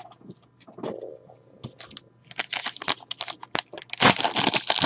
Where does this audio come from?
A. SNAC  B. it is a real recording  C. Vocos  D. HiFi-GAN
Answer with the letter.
B